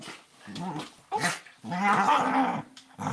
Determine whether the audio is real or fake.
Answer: real